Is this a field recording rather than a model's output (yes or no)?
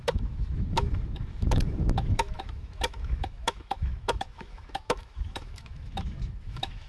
no